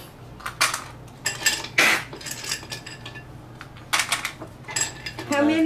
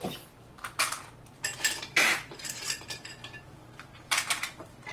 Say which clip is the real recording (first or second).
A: first